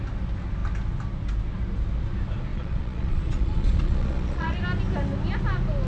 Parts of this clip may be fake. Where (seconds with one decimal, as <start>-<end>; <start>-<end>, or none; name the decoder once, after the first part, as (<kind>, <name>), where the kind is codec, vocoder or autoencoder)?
2.5-4.6 (vocoder, Vocos)